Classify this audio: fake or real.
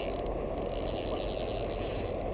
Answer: real